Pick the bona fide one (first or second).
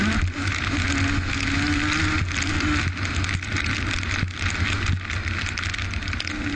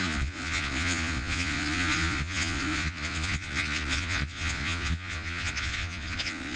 first